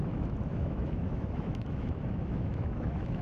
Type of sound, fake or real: fake